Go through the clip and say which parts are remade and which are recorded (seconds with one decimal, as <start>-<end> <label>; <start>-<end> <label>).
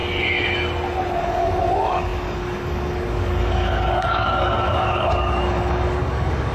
0.0-1.2 recorded; 1.2-6.5 remade